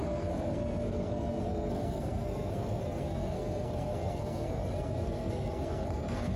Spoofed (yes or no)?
yes